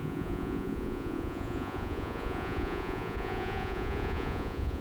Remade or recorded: remade